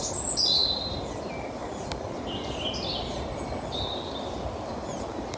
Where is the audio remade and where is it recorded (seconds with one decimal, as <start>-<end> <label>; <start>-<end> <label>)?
0.0-5.4 recorded